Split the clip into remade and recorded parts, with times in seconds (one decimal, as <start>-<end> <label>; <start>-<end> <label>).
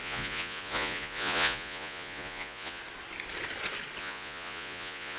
0.0-2.8 remade; 2.8-4.0 recorded; 4.0-5.2 remade